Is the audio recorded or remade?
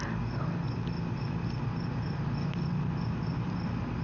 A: recorded